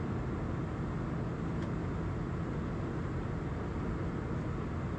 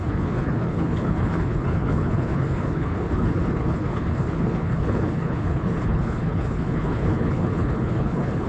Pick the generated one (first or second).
second